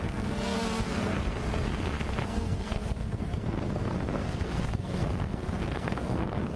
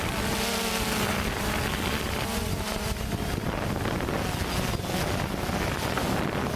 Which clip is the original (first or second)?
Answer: second